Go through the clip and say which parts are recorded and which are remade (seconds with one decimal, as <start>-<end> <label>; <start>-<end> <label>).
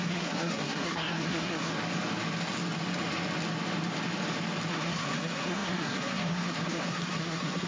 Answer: 0.0-1.7 remade; 1.7-4.7 recorded; 4.7-7.7 remade